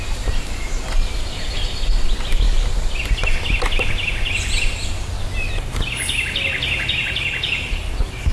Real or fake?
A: real